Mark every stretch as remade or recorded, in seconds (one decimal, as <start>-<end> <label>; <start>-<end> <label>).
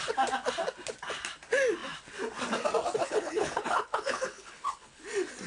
0.0-3.0 recorded; 3.0-5.0 remade; 5.0-5.5 recorded